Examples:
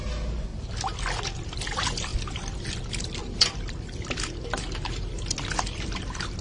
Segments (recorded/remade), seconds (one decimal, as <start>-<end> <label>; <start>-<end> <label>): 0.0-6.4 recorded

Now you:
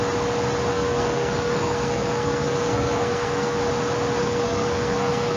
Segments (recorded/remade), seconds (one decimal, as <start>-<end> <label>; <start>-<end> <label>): 0.0-0.7 recorded; 0.7-3.6 remade; 3.6-4.2 recorded; 4.2-5.4 remade

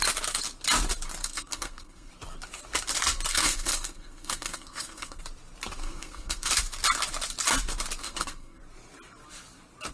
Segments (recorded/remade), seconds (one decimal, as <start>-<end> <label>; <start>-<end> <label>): 0.0-1.2 recorded; 1.2-2.1 remade; 2.1-3.3 recorded; 3.3-5.2 remade; 5.2-5.8 recorded; 5.8-6.5 remade; 6.5-8.0 recorded; 8.0-8.6 remade; 8.6-9.9 recorded

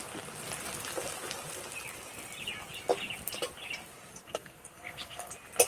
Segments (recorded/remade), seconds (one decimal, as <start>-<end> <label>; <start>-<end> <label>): 0.0-4.2 recorded; 4.2-5.3 remade; 5.3-5.7 recorded

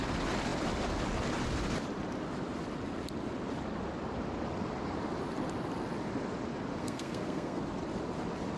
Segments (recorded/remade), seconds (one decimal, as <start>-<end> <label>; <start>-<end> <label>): 0.0-6.8 recorded; 6.8-7.6 remade; 7.6-8.6 recorded

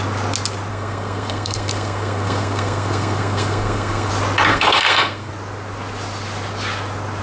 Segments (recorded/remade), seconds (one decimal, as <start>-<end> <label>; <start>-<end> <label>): 0.0-0.7 recorded; 0.7-4.1 remade; 4.1-4.5 recorded; 4.5-5.3 remade; 5.3-7.2 recorded

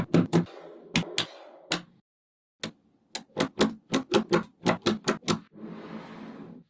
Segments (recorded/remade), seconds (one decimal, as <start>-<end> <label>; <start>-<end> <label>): 0.0-6.7 recorded

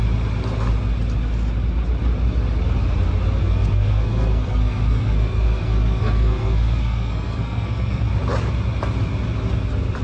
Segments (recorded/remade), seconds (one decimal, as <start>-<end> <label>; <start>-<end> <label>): 0.0-3.4 recorded; 3.4-8.1 remade; 8.1-10.0 recorded